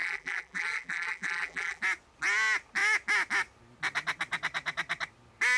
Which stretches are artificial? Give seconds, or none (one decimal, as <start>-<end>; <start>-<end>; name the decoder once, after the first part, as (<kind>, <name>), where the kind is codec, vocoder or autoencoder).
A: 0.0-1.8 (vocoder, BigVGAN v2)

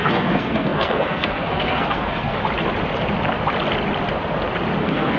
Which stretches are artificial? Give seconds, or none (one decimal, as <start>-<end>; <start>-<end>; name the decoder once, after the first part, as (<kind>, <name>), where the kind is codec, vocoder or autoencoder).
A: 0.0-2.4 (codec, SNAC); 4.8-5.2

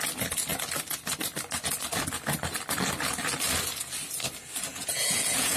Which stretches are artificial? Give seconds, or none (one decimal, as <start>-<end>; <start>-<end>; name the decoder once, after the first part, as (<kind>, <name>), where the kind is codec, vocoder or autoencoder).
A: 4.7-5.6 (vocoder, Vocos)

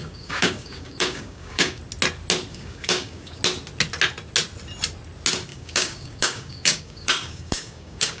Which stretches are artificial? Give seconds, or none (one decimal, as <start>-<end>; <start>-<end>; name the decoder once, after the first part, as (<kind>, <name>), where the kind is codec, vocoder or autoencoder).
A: 0.0-1.8 (codec, DAC); 2.5-3.4; 5.5-8.2

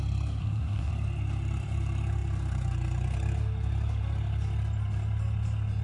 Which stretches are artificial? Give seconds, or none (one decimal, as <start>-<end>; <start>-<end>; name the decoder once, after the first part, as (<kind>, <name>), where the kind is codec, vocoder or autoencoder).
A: 0.4-0.9 (codec, SNAC)

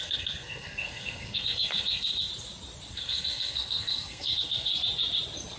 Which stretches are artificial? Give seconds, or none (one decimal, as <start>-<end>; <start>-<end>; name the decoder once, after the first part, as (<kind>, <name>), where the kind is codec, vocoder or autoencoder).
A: 0.0-2.3 (codec, SNAC); 2.9-4.7

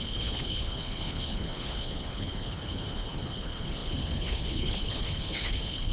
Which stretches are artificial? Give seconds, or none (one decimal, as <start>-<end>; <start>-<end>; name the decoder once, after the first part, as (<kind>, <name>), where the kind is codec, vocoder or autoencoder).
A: 0.0-5.9 (codec, HILCodec)

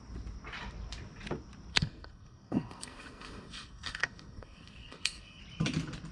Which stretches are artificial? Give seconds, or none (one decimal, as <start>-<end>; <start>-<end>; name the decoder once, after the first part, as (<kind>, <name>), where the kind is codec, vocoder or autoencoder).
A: 1.7-5.4 (codec, SNAC)